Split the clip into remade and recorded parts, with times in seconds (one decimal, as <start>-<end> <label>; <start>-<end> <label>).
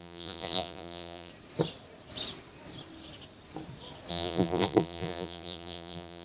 0.0-1.3 remade; 1.3-4.1 recorded; 4.1-6.2 remade